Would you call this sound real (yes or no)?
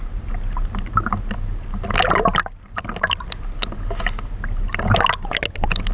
yes